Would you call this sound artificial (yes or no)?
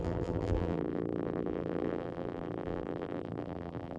yes